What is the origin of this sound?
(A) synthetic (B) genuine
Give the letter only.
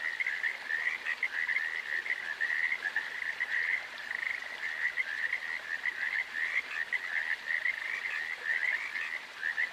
B